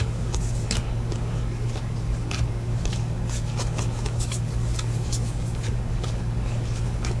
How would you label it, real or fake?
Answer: fake